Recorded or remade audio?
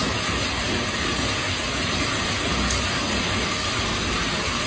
recorded